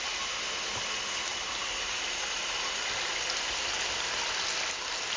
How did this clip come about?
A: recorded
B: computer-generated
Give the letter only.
A